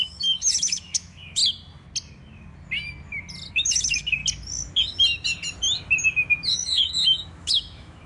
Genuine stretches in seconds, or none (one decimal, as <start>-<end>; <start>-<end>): 1.4-3.5; 4.2-6.5